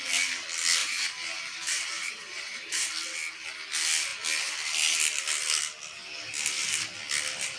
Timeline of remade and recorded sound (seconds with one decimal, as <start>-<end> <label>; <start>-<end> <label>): 0.0-0.8 recorded; 0.8-2.9 remade; 2.9-7.6 recorded